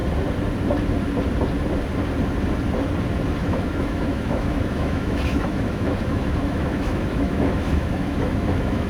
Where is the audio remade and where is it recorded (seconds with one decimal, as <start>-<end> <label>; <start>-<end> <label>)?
0.0-3.4 recorded; 3.4-8.9 remade